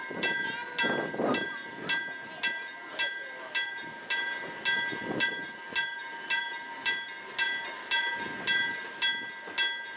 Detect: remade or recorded recorded